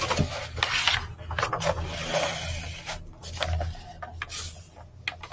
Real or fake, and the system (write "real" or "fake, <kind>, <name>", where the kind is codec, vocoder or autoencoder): real